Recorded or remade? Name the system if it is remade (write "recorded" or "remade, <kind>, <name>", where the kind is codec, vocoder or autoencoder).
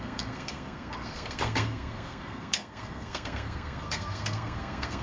remade, codec, SNAC